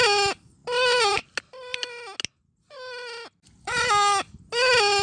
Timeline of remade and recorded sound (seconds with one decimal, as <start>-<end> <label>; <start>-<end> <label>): 0.0-5.0 recorded